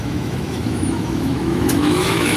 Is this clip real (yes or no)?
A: no